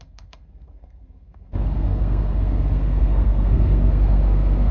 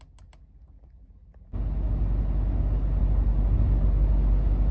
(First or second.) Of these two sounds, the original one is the second